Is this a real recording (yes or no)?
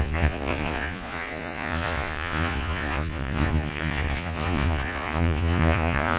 no